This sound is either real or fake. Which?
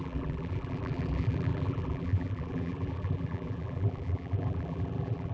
fake